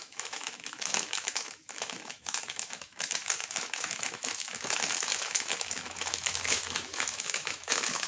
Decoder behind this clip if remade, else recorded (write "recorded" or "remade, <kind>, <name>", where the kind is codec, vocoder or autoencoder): remade, autoencoder, DAC-VAE